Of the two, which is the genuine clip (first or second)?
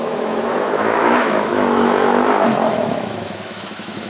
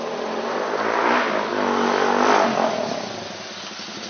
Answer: second